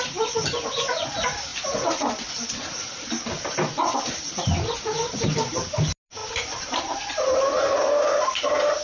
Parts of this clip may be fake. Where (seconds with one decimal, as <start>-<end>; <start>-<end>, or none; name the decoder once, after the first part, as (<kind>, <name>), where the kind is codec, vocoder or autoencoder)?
none